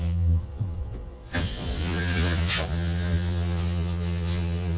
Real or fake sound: fake